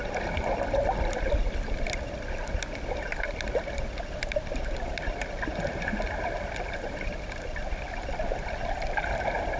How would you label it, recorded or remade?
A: recorded